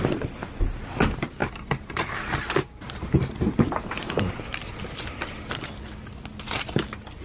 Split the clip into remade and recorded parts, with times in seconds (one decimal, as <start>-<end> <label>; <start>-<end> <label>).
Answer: 0.0-1.4 recorded; 1.4-4.8 remade; 4.8-7.2 recorded

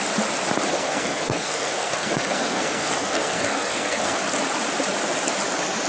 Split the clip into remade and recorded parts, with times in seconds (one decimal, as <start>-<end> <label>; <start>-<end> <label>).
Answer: 0.0-0.7 recorded; 0.7-4.2 remade; 4.2-5.9 recorded

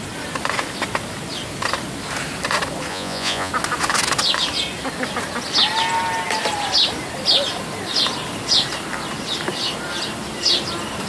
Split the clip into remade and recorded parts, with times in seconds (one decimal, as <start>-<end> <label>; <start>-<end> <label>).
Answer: 0.0-2.9 recorded; 2.9-3.5 remade; 3.5-11.1 recorded

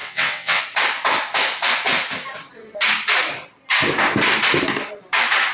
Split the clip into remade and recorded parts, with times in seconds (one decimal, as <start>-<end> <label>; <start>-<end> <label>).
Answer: 0.0-0.6 remade; 0.6-5.5 recorded